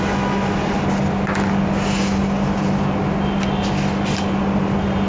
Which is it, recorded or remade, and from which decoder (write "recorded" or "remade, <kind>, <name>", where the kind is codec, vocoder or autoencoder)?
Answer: recorded